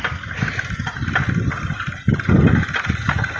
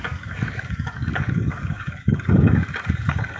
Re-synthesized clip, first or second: second